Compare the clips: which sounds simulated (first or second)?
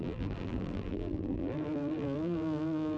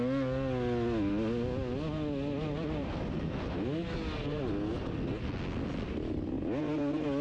first